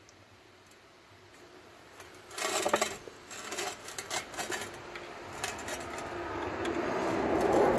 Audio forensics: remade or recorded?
remade